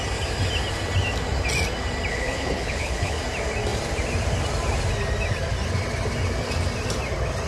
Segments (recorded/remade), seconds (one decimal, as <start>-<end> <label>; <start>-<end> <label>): 0.0-2.1 recorded; 2.1-3.2 remade; 3.2-7.5 recorded